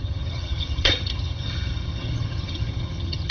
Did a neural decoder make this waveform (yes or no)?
yes